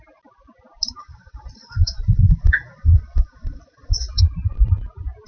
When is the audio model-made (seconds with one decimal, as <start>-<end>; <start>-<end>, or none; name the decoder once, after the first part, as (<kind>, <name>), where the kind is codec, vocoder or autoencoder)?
1.0-4.2 (vocoder, WaveNeXt)